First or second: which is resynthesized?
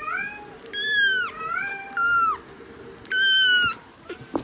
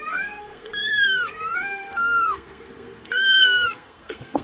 second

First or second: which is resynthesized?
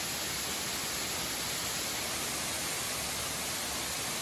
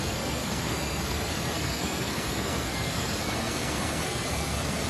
second